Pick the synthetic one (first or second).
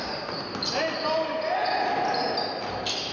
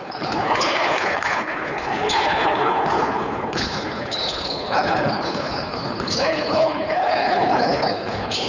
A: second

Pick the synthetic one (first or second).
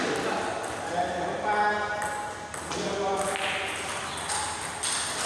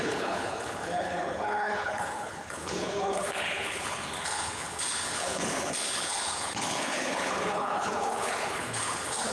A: second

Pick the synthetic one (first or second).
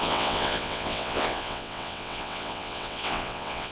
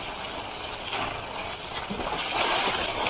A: first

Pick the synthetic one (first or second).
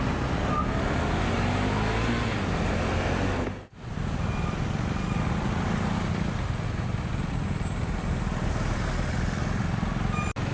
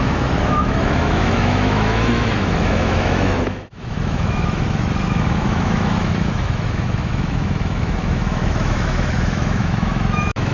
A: second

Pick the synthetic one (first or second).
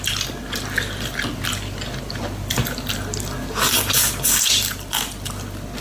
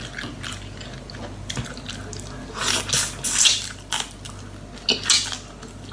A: first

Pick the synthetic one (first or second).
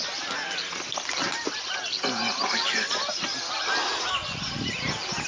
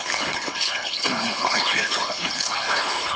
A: second